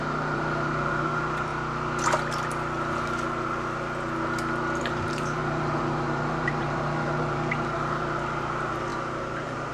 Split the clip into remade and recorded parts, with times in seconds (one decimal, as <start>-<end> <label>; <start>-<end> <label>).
0.0-1.5 remade; 1.5-4.8 recorded; 4.8-9.7 remade